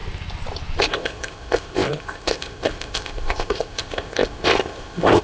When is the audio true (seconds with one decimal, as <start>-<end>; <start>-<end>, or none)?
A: 0.0-0.8

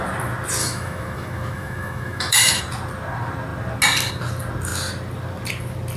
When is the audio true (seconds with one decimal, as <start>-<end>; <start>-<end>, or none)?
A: 0.0-0.6; 2.6-6.0